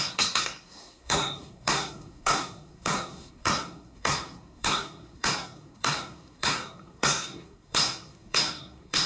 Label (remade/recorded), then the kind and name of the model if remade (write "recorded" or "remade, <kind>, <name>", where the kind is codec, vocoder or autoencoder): remade, codec, SNAC